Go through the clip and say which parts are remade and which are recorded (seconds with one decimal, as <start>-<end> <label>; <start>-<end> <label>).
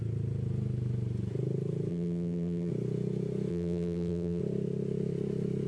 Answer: 0.0-1.9 recorded; 1.9-2.7 remade; 2.7-3.5 recorded; 3.5-4.4 remade; 4.4-5.7 recorded